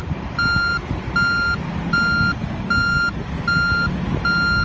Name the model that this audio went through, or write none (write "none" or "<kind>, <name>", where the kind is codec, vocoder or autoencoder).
none